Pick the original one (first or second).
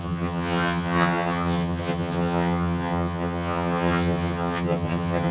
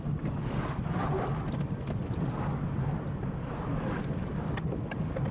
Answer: second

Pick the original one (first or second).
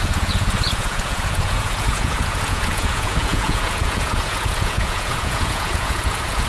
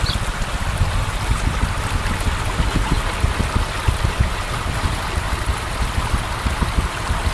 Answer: second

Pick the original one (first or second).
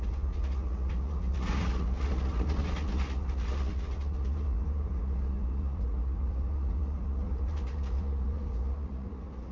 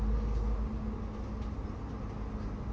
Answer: second